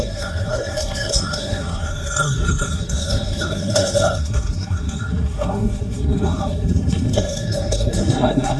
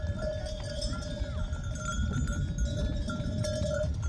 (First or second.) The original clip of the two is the second